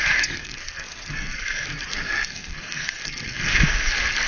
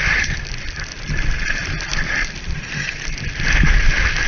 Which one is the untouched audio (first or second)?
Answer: second